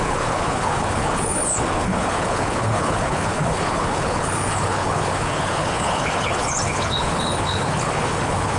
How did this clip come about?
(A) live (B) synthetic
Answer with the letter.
B